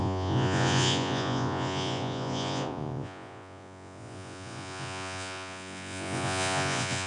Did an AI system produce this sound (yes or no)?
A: yes